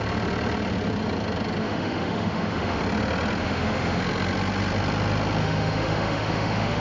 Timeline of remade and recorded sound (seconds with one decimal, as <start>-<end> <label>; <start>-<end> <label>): 0.0-1.6 recorded; 1.6-2.8 remade; 2.8-3.4 recorded; 3.4-4.0 remade; 4.0-5.4 recorded; 5.4-6.8 remade